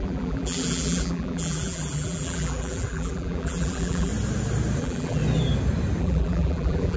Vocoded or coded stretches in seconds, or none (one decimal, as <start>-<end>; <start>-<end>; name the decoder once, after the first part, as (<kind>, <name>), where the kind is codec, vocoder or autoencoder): 0.0-4.1 (vocoder, BigVGAN v2); 4.8-5.2; 6.0-7.0